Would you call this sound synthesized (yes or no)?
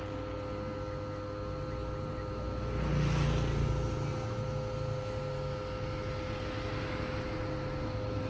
no